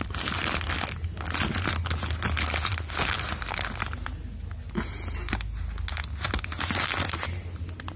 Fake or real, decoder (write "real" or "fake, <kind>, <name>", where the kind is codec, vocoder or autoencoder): real